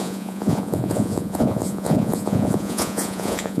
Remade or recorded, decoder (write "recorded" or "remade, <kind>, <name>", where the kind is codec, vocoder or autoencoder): remade, vocoder, Vocos